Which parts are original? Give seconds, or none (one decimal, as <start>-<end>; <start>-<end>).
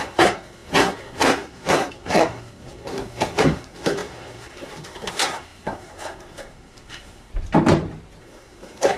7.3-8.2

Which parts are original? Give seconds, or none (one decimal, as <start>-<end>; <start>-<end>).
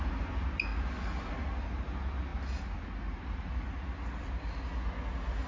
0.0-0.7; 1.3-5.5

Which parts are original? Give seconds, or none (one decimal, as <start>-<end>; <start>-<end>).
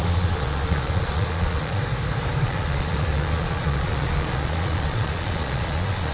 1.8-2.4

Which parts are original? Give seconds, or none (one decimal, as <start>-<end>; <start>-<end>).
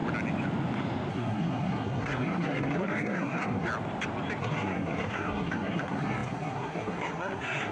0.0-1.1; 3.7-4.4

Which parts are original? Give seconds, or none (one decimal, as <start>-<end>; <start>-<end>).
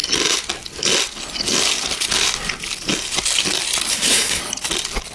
0.0-3.9; 4.4-5.1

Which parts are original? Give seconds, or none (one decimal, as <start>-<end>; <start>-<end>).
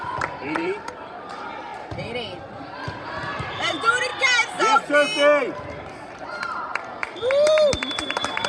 1.7-2.6; 4.1-5.9; 6.7-7.8